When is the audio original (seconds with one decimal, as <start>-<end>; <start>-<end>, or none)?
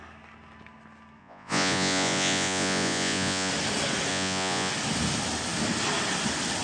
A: 0.0-1.2; 3.5-4.1; 4.7-6.6